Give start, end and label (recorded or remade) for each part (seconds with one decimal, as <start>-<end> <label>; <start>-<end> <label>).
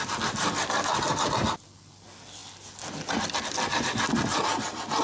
0.0-5.0 recorded